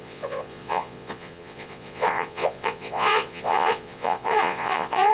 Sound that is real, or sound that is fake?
fake